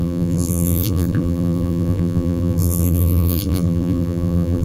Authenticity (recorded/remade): remade